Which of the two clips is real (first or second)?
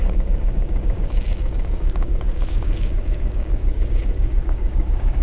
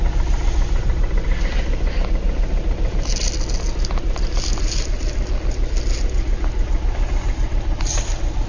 second